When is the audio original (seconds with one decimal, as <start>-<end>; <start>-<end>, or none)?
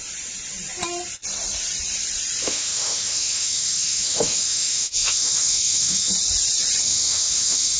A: 0.0-2.4; 6.1-6.8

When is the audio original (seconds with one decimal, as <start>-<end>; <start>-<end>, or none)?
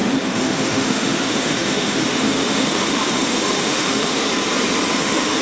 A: 4.2-5.0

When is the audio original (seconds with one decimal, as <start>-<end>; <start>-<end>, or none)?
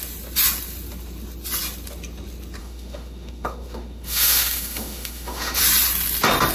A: 0.0-2.6; 5.6-6.5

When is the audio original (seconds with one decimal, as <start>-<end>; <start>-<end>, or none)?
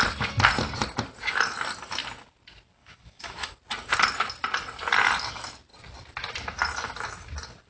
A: 0.0-2.8; 3.5-7.7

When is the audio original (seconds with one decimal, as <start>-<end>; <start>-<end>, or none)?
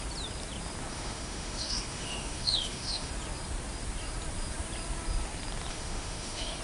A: 0.0-0.9; 3.1-5.7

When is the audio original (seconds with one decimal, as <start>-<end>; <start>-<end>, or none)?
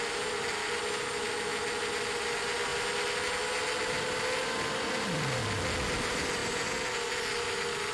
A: 0.0-7.9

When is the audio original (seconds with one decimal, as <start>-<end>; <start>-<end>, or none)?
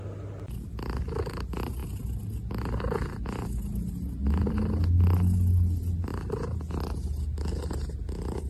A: 0.0-8.5